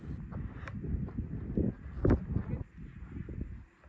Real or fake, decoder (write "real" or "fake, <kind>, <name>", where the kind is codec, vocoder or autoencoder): real